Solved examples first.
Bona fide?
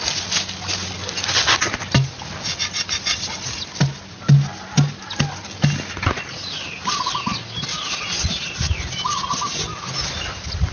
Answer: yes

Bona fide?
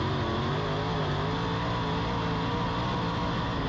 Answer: yes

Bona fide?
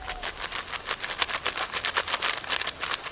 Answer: yes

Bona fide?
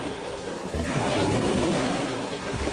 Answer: no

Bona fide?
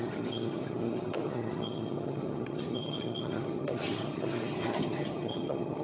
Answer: no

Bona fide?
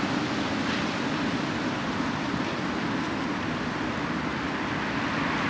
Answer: yes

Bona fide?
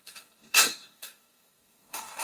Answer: no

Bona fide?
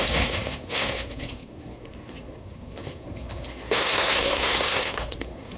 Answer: no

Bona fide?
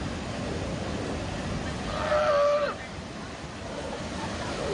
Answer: yes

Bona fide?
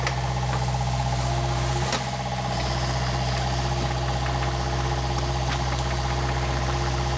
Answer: yes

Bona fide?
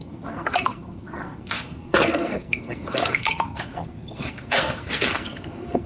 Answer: no